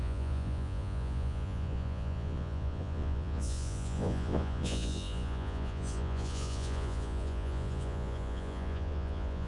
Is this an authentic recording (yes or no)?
no